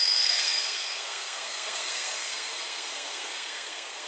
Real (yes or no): no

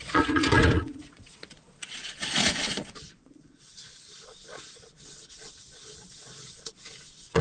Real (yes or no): no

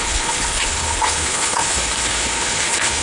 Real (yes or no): no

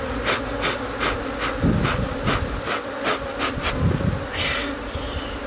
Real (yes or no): yes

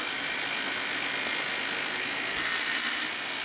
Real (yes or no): yes